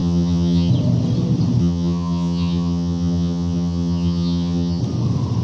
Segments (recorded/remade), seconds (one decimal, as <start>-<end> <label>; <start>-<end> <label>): 0.0-0.7 remade; 0.7-1.6 recorded; 1.6-4.8 remade; 4.8-5.4 recorded